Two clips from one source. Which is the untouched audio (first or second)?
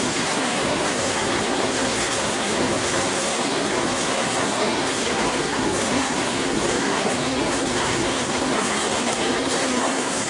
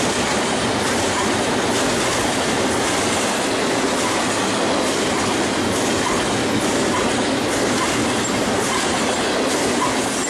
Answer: second